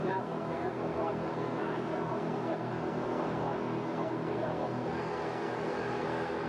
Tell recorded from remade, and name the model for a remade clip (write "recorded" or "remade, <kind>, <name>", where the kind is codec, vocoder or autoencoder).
remade, codec, SNAC